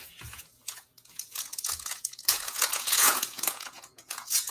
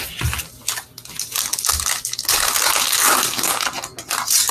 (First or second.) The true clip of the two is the second